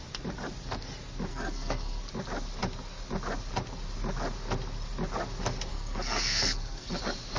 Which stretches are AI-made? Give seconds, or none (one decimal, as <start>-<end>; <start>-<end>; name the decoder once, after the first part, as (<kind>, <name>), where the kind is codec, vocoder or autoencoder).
1.3-2.0 (codec, SNAC); 5.7-7.0